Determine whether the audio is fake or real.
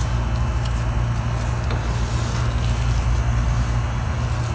real